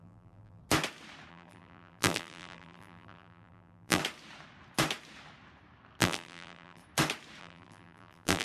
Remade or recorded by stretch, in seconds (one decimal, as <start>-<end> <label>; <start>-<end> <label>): 0.0-0.6 remade; 0.6-1.3 recorded; 1.3-4.0 remade; 4.0-6.0 recorded; 6.0-6.8 remade; 6.8-7.4 recorded; 7.4-8.4 remade

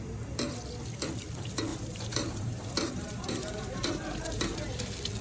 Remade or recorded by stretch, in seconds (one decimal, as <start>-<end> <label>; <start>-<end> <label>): 0.0-1.7 recorded; 1.7-4.8 remade; 4.8-5.2 recorded